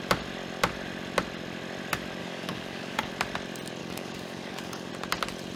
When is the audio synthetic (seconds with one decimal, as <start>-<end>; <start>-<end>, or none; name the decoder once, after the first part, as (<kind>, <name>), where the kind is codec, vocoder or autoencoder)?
2.2-3.1 (codec, DAC); 3.8-4.9